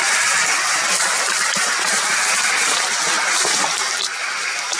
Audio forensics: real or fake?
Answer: real